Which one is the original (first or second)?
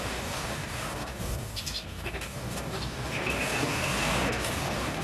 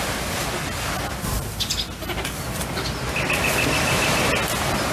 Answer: second